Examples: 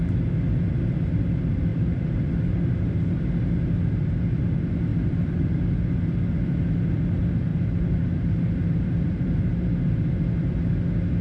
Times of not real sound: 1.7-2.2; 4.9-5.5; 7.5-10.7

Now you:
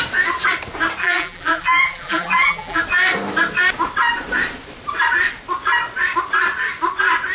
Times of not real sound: 1.0-2.8

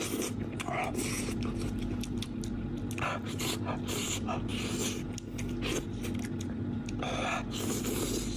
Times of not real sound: none

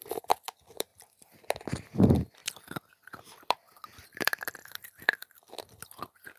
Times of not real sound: 0.0-0.9; 1.8-2.4; 3.4-6.4